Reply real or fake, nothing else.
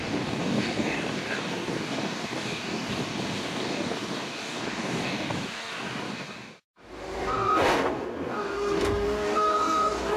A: fake